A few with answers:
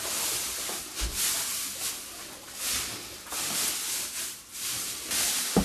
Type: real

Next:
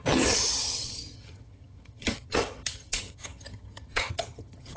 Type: fake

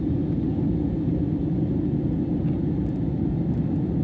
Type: real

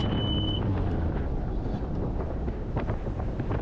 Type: real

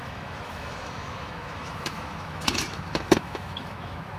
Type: fake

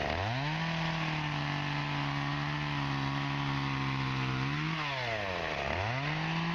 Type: real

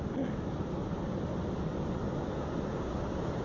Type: real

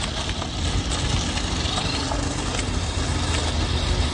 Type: real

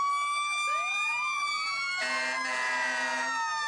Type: real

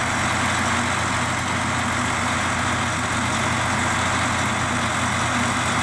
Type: real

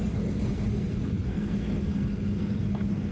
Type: fake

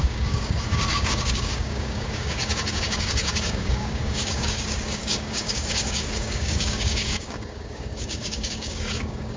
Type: fake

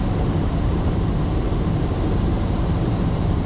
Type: fake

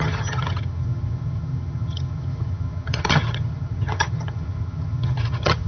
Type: fake